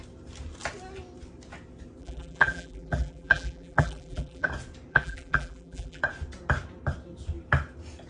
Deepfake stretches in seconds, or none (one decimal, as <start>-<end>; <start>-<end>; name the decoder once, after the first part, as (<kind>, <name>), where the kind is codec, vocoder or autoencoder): 2.0-4.5 (vocoder, BigVGAN v2); 4.9-6.0